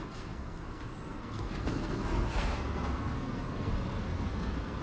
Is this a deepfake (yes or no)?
yes